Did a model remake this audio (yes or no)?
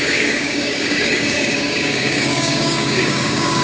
yes